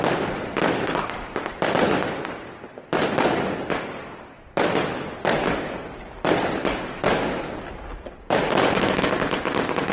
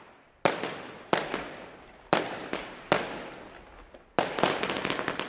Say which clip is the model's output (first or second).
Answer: first